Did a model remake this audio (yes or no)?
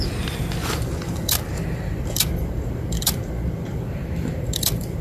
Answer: yes